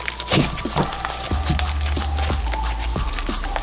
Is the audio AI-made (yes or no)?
no